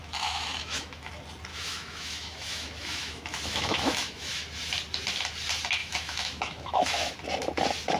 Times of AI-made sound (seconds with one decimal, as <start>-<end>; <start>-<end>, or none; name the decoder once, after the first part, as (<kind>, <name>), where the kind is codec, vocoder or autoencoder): 0.0-1.1 (autoencoder, DAC-VAE); 1.5-4.4; 5.8-7.1